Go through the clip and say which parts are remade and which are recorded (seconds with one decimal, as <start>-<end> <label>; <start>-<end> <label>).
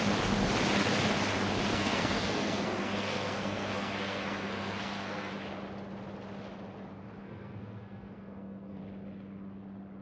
0.0-1.7 recorded; 1.7-5.3 remade; 5.3-7.2 recorded; 7.2-8.8 remade; 8.8-10.0 recorded